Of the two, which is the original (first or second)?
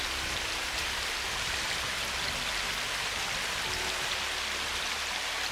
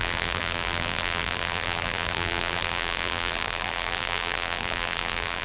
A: first